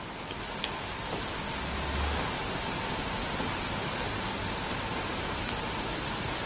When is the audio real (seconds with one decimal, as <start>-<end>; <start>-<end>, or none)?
0.0-6.5

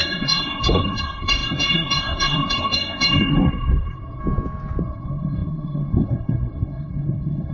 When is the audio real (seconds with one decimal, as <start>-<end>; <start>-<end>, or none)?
4.2-4.8

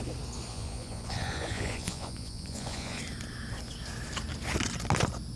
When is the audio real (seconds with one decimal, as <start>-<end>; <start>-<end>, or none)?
0.0-0.5; 3.0-5.4

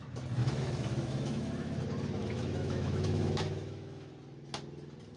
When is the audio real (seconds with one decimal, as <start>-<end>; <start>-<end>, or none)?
0.0-0.4; 1.8-2.2; 4.1-5.2